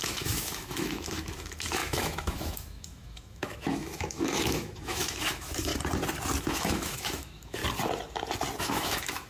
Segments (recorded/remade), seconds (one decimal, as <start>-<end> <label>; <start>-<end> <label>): 0.0-5.7 remade; 5.7-6.4 recorded; 6.4-7.6 remade; 7.6-8.6 recorded; 8.6-9.3 remade